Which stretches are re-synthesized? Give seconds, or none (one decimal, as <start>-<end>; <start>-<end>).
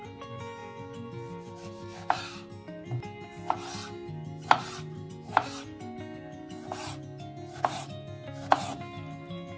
none